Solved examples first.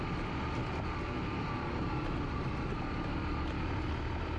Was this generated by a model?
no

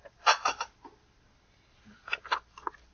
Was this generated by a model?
no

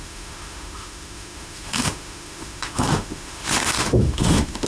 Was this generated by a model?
yes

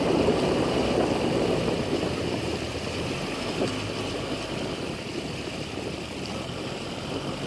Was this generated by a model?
no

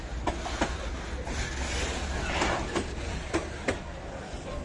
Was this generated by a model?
no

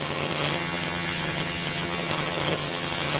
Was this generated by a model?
yes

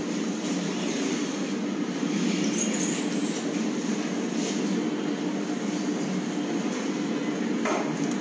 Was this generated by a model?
no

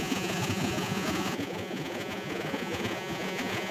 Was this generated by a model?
yes